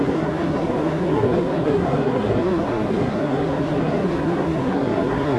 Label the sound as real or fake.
fake